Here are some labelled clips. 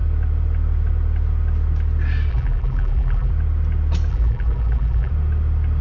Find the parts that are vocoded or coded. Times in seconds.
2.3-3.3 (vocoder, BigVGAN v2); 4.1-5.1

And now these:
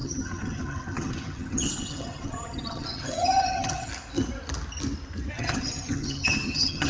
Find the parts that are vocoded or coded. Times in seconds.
0.0-3.9 (vocoder, HiFi-GAN); 5.3-6.9

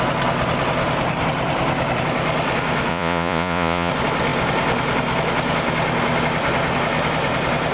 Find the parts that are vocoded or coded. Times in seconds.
2.9-3.9 (vocoder, Vocos)

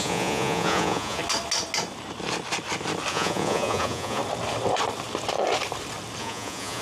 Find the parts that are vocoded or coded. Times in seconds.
0.0-1.2 (vocoder, Vocos); 3.1-4.2; 6.2-6.8

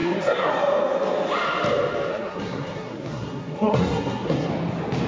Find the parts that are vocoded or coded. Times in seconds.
0.0-0.5 (codec, SNAC); 2.1-4.5

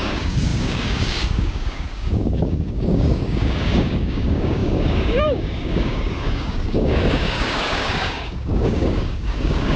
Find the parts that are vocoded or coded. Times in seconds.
0.0-9.8 (codec, DAC)

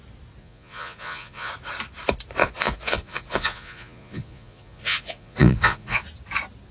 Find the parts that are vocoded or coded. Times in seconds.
0.4-1.5 (vocoder, Vocos); 2.4-6.0

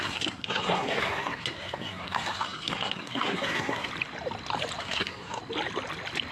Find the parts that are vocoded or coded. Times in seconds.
0.0-3.9 (codec, SNAC); 4.8-5.4